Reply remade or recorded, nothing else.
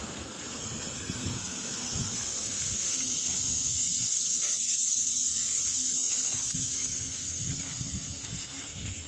remade